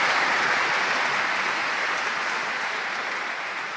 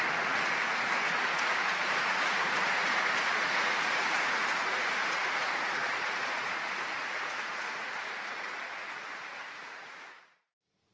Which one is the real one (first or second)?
first